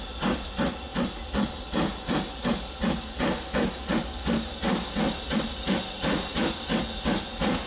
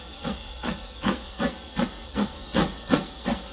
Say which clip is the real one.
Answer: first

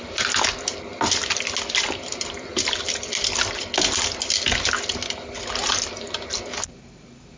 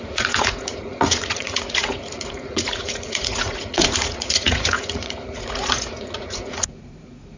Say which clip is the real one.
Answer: first